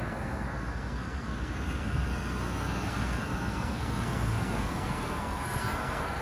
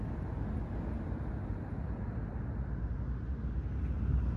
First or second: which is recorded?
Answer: second